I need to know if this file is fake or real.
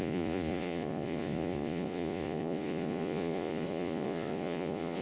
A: fake